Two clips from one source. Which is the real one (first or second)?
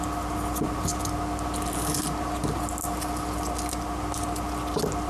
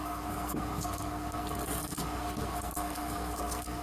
first